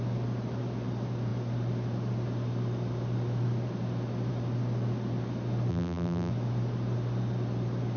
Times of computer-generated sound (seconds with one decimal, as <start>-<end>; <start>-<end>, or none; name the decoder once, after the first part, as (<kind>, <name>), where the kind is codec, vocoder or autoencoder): 5.7-6.3 (vocoder, BigVGAN v2)